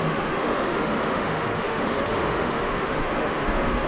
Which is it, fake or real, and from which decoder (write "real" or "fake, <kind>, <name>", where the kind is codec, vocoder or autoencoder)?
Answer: fake, autoencoder, DAC-VAE